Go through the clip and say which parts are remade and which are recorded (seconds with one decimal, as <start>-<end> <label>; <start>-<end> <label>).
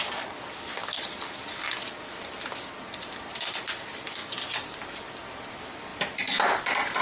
0.0-7.0 recorded